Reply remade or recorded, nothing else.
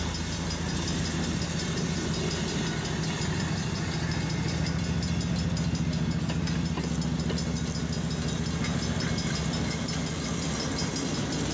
recorded